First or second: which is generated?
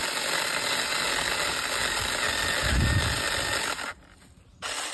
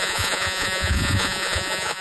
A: second